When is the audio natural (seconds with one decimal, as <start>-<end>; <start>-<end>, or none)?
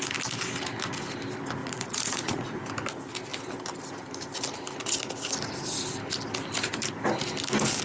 0.0-1.6; 2.6-7.8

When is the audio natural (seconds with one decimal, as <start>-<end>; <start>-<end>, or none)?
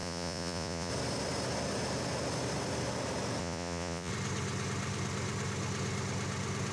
0.9-3.4; 4.1-6.7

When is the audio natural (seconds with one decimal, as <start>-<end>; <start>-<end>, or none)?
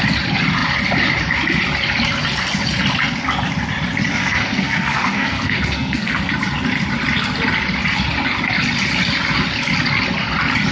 0.0-4.1; 6.3-10.7